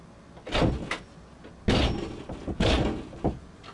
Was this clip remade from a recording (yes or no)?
no